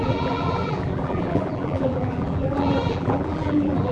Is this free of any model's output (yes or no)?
no